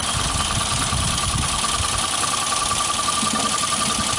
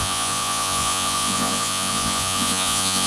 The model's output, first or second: second